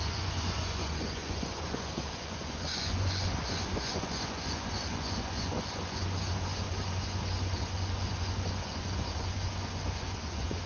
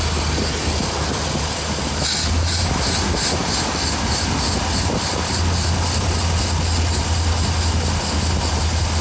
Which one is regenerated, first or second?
first